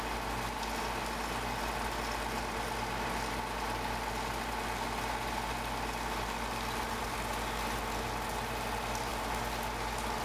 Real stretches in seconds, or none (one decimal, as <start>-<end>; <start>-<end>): 0.0-10.2